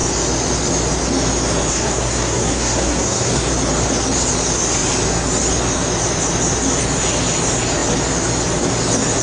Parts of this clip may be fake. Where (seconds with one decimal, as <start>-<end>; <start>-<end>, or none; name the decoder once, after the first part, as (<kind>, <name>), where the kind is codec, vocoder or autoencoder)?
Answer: 1.7-3.5 (codec, SNAC)